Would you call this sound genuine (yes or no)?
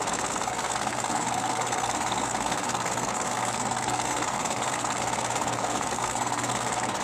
no